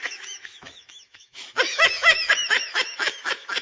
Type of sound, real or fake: fake